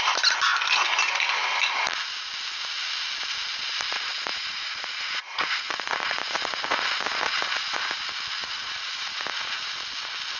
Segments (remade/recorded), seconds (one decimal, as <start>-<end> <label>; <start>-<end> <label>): 0.0-4.3 recorded; 4.3-8.0 remade; 8.0-8.4 recorded; 8.4-9.8 remade; 9.8-10.4 recorded